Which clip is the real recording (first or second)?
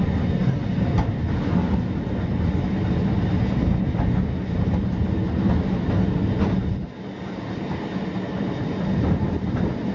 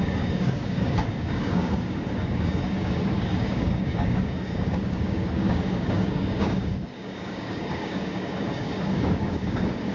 first